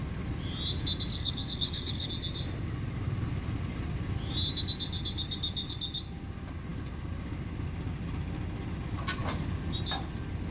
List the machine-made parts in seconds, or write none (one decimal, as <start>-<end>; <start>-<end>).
1.1-2.1